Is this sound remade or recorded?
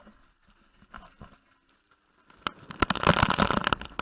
recorded